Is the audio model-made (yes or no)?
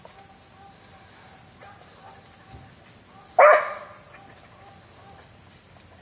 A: no